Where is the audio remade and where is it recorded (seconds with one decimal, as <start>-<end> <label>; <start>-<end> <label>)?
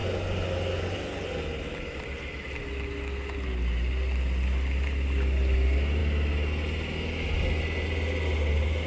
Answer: 0.0-8.9 recorded